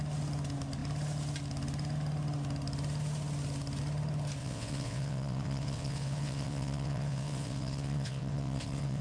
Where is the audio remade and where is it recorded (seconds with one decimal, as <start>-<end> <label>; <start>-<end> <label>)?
0.0-4.4 recorded; 4.4-9.0 remade